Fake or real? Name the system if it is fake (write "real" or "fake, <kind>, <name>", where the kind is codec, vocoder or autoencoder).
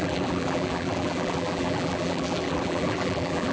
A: fake, vocoder, BigVGAN v2